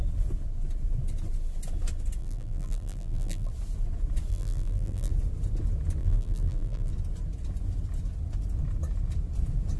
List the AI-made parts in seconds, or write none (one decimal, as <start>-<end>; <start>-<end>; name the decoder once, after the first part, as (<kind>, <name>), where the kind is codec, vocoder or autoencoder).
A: 2.2-3.5 (vocoder, BigVGAN v2); 4.3-5.1; 6.0-6.9